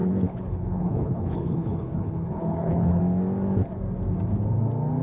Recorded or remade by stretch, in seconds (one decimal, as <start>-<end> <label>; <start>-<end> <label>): 0.0-3.0 remade; 3.0-5.0 recorded